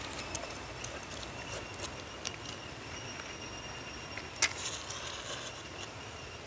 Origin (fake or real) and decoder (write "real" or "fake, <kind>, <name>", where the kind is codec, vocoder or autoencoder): real